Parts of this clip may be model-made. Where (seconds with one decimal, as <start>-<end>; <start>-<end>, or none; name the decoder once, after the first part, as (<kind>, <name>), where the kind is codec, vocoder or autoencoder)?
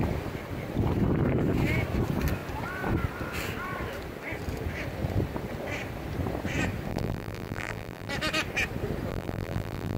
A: 6.9-8.1 (vocoder, BigVGAN v2); 9.1-10.0